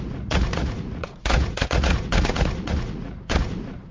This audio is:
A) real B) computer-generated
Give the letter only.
B